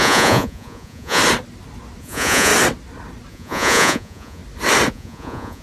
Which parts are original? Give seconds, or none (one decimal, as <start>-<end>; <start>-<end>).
1.2-2.0; 2.5-3.3; 4.4-4.9